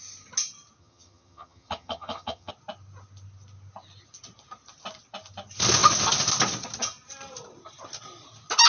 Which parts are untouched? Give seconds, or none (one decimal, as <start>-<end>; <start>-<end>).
0.0-0.8; 2.5-8.7